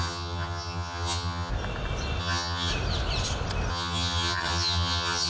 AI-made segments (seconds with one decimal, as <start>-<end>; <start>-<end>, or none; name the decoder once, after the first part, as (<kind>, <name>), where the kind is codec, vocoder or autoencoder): 0.0-1.5 (vocoder, HiFi-GAN); 2.2-2.7; 3.7-5.3